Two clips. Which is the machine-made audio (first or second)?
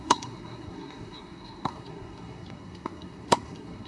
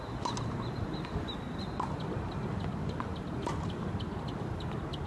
first